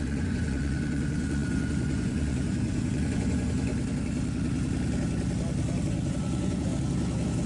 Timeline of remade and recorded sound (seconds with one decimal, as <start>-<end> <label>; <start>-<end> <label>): 0.0-3.7 remade; 3.7-6.1 recorded; 6.1-6.7 remade; 6.7-7.5 recorded